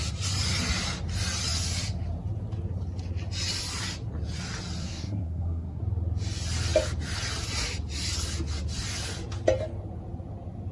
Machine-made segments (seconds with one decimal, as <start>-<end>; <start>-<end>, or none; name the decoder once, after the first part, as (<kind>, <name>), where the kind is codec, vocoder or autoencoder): 4.8-5.8 (codec, SNAC)